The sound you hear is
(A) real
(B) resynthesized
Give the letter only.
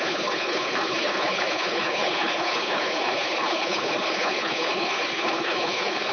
B